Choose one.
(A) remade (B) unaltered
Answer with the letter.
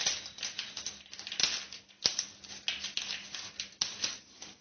B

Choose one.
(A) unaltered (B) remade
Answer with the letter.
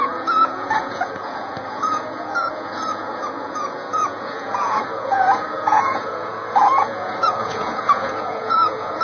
B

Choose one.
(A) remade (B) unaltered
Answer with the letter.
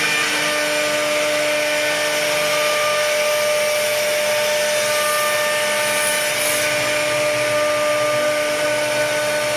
B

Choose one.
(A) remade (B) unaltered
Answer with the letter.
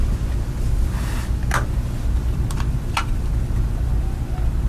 B